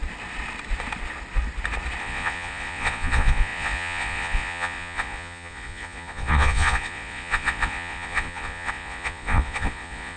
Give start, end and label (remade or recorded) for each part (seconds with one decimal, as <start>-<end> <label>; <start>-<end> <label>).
0.0-2.0 recorded; 2.0-10.2 remade